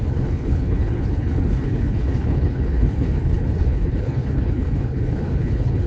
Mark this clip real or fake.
fake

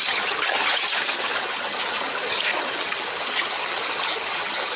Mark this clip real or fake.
fake